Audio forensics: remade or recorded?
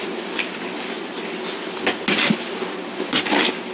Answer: recorded